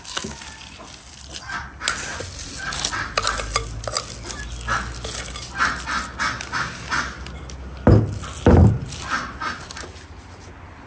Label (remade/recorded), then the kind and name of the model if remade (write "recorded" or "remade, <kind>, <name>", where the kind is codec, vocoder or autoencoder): recorded